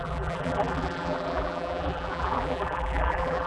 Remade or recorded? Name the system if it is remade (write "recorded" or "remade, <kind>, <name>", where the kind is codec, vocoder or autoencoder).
remade, vocoder, BigVGAN v2